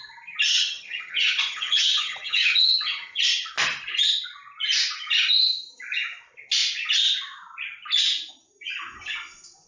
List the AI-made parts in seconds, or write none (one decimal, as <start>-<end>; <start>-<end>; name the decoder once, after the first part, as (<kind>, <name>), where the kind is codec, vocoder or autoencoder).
0.5-3.2 (vocoder, HiFi-GAN)